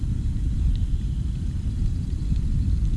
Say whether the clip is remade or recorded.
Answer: recorded